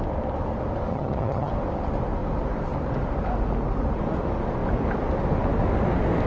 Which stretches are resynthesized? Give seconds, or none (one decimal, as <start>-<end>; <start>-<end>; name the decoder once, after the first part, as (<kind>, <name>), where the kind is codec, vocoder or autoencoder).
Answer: 0.9-1.5 (vocoder, HiFi-GAN)